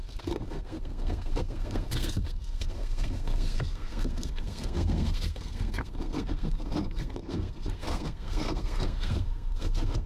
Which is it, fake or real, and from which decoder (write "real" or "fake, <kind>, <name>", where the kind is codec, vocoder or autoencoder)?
fake, codec, SNAC